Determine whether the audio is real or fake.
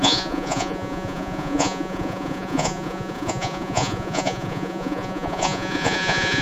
fake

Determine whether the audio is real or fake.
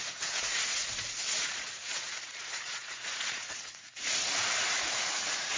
fake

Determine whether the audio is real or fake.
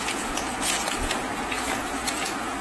fake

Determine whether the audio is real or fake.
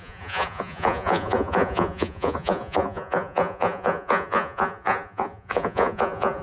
fake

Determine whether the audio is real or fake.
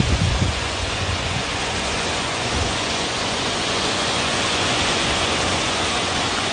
fake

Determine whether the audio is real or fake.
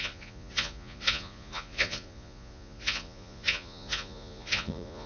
fake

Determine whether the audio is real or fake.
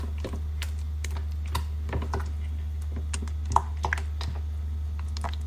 real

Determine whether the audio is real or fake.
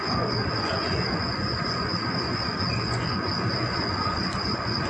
fake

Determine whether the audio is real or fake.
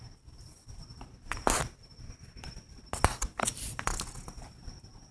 real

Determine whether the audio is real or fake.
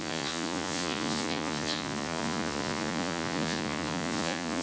fake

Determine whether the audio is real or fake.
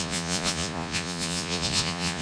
fake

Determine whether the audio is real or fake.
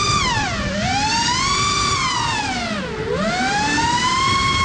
real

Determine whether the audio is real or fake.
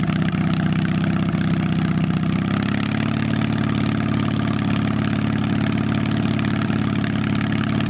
real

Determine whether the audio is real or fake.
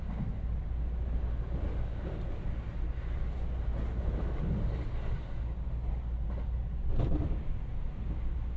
real